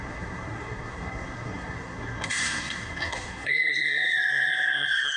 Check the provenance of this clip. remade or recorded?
remade